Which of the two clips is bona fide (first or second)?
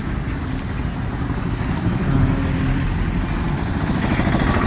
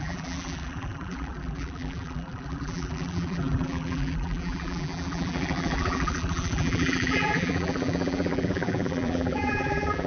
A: first